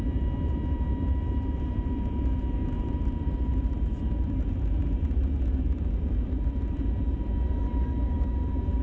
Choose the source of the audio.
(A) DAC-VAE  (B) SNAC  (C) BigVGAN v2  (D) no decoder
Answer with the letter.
C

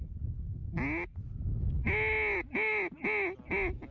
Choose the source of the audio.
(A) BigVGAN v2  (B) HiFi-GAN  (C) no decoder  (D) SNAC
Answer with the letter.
C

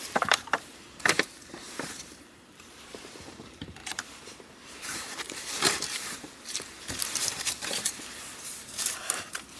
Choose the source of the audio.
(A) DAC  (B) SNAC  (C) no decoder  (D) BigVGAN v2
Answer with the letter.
D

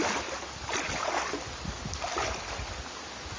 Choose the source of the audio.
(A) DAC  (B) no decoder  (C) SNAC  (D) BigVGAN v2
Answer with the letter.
B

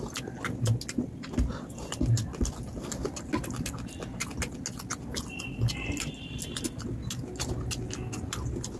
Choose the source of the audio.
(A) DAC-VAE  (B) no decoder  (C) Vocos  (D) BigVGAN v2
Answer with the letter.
B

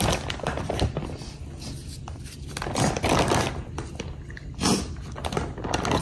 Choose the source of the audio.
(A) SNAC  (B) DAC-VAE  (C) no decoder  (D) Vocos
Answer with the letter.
C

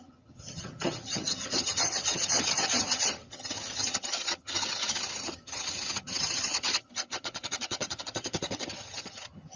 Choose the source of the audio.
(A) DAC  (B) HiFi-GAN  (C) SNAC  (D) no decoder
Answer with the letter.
B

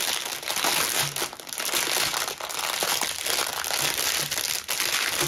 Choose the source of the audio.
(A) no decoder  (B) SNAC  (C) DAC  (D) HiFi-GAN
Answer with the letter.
A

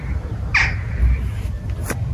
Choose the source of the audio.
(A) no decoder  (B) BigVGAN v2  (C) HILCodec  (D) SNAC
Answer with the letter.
A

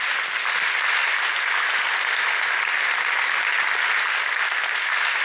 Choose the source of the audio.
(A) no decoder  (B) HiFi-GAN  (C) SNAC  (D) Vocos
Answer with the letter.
A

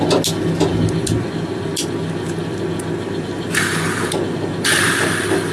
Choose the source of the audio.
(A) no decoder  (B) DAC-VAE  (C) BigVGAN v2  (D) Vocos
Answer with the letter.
A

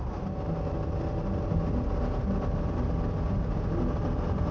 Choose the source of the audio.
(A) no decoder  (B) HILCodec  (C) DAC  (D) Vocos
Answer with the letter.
A